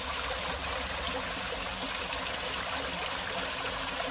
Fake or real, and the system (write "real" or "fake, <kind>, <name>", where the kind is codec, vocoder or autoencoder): real